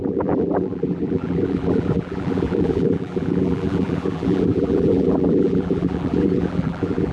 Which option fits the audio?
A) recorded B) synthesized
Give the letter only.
B